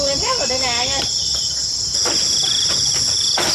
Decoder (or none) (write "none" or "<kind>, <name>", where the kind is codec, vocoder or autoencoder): none